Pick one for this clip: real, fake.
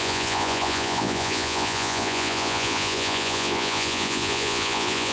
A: fake